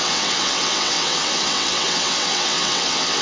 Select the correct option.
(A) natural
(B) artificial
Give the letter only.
B